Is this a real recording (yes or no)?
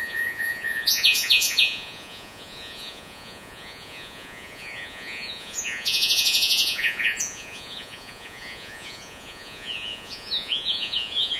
no